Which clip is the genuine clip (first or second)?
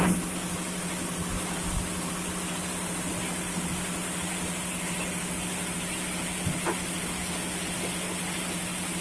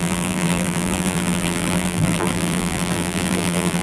first